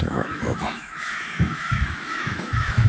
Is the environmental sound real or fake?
fake